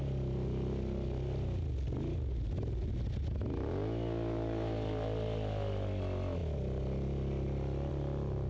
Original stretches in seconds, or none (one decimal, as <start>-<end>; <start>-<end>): 0.0-8.5